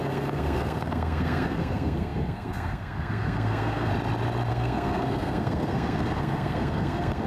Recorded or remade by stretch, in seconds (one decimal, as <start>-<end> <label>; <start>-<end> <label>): 0.0-3.9 remade; 3.9-4.5 recorded; 4.5-7.3 remade